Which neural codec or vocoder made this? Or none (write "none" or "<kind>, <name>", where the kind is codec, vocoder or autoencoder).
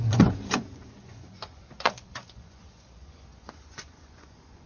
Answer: vocoder, Vocos